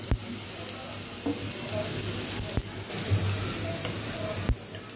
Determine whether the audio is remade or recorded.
recorded